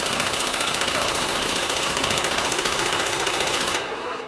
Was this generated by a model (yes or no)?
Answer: yes